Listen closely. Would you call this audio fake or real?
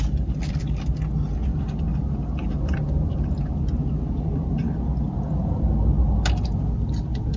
real